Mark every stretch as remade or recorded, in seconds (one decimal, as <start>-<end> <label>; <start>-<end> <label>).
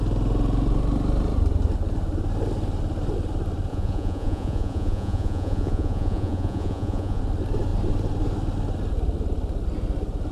0.0-3.7 recorded; 3.7-7.2 remade; 7.2-10.3 recorded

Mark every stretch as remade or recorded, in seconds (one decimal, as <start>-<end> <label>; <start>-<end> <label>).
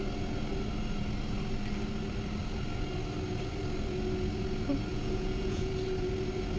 0.0-4.9 recorded; 4.9-5.7 remade; 5.7-6.6 recorded